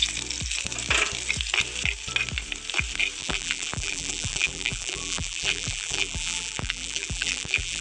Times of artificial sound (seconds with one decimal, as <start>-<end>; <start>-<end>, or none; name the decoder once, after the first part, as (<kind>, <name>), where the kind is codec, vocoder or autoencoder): 3.2-7.8 (vocoder, BigVGAN v2)